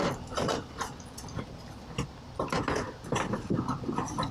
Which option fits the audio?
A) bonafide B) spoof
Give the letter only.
B